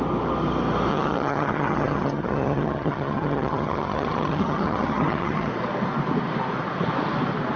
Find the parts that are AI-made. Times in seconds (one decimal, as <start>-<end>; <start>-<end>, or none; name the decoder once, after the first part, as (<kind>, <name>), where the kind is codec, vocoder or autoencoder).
0.9-5.5 (vocoder, HiFi-GAN)